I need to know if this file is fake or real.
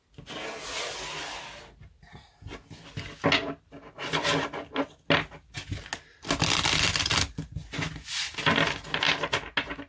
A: real